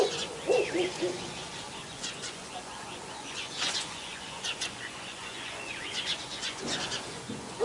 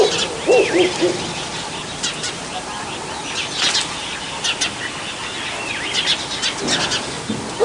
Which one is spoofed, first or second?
first